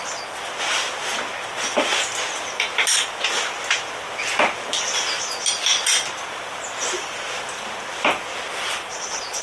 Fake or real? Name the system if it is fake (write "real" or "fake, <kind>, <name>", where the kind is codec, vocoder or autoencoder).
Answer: real